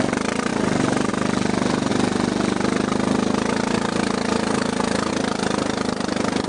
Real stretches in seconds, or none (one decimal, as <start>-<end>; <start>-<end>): 0.0-6.5